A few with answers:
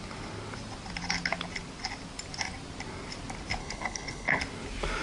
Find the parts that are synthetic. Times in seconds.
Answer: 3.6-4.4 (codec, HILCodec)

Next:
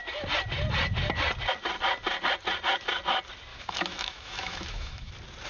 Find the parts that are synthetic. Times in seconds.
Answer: 3.5-5.1 (autoencoder, DAC-VAE)